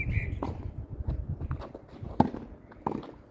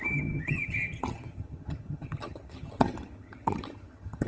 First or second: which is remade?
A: second